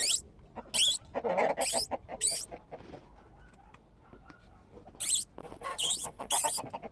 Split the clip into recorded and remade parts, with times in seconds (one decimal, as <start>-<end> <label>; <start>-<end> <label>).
0.0-5.4 recorded; 5.4-6.3 remade; 6.3-6.9 recorded